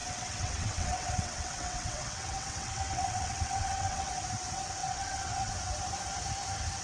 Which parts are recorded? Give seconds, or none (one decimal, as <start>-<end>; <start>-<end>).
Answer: 4.1-4.8; 5.5-6.8